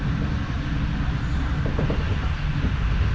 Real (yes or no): yes